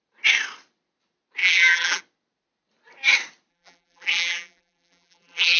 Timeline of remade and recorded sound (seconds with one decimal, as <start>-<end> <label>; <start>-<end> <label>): 0.0-1.4 recorded; 1.4-2.0 remade; 2.0-3.5 recorded; 3.5-5.6 remade